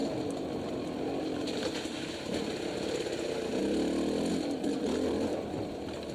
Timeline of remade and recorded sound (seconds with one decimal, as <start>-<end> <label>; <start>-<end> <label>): 0.0-6.1 recorded